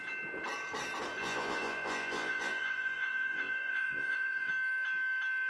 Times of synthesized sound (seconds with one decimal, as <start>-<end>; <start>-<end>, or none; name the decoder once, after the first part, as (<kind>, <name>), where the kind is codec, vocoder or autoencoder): 1.2-4.5 (vocoder, Vocos)